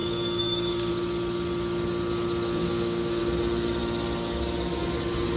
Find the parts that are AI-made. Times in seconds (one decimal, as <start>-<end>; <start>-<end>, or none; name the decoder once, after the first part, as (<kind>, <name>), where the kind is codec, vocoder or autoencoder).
0.0-0.9 (codec, DAC); 2.6-3.2